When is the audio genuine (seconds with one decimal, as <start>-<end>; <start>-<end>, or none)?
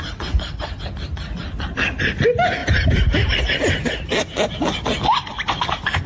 0.0-2.6; 3.4-3.8; 4.6-6.1